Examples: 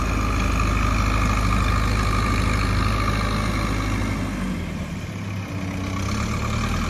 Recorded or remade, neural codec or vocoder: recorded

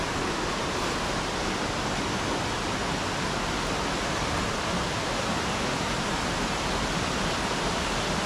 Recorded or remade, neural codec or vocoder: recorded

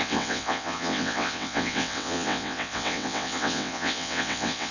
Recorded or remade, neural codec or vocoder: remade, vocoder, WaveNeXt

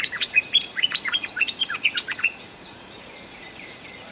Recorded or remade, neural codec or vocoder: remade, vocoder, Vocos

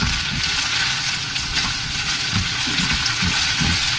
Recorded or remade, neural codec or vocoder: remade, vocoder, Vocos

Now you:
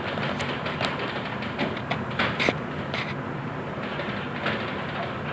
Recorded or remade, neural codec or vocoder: recorded